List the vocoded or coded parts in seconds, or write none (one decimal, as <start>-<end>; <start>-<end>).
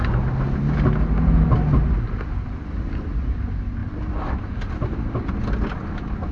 none